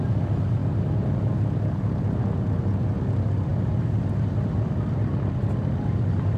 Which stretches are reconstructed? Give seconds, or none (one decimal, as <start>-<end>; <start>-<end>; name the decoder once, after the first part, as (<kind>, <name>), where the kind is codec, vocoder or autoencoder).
none